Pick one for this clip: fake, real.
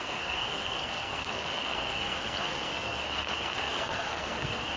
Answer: fake